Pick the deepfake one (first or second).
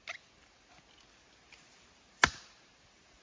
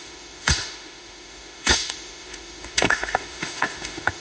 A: second